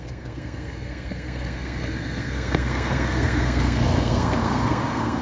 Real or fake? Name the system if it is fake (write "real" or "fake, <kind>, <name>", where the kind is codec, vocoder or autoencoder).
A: fake, codec, SNAC